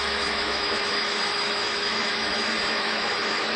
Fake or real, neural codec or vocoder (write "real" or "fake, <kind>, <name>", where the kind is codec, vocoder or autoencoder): fake, autoencoder, DAC-VAE